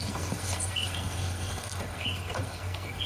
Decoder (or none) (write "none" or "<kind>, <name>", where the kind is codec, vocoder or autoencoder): codec, SNAC